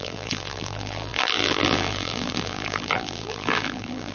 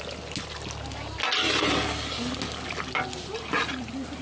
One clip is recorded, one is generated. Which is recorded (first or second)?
second